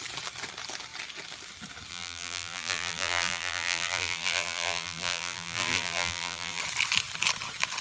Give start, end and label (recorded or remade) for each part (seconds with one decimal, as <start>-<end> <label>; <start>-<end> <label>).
0.0-1.9 recorded; 1.9-6.6 remade; 6.6-7.8 recorded